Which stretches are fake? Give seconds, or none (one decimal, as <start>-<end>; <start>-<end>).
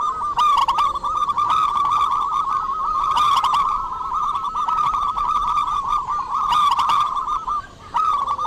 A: 0.0-0.6; 2.5-8.5